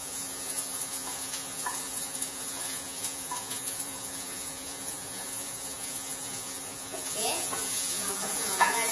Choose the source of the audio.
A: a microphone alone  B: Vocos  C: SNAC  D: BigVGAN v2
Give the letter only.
B